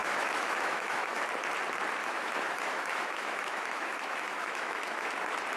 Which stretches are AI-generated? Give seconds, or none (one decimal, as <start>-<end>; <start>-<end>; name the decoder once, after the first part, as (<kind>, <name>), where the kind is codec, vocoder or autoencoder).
0.0-1.2 (autoencoder, DAC-VAE); 2.0-5.1